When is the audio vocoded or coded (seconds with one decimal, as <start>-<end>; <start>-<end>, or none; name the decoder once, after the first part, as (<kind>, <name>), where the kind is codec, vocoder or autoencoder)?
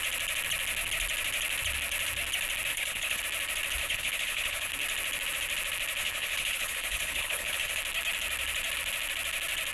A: 2.7-3.2 (codec, HILCodec); 3.8-4.7; 6.0-7.8